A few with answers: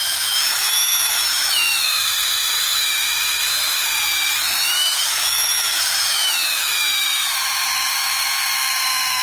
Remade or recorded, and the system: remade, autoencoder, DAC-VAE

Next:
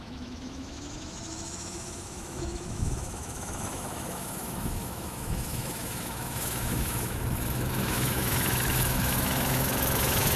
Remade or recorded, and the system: remade, autoencoder, DAC-VAE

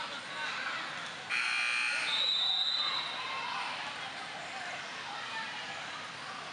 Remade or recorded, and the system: recorded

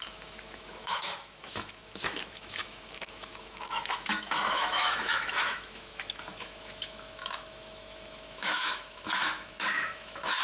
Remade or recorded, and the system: remade, autoencoder, DAC-VAE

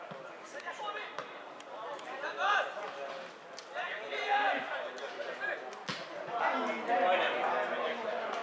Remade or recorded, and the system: recorded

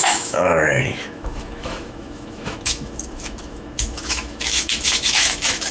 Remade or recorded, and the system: remade, autoencoder, DAC-VAE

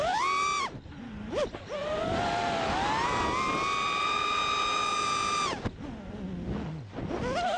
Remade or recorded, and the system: recorded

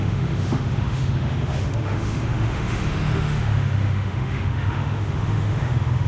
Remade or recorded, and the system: remade, autoencoder, DAC-VAE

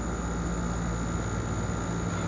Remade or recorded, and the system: recorded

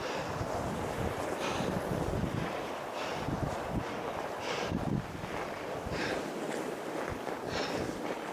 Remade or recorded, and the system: recorded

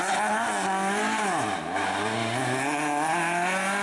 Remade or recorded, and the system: recorded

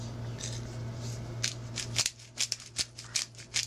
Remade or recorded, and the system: recorded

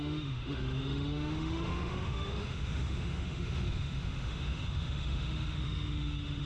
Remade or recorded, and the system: remade, autoencoder, DAC-VAE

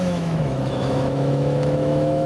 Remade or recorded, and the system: remade, autoencoder, DAC-VAE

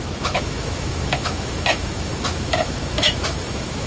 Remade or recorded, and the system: remade, autoencoder, DAC-VAE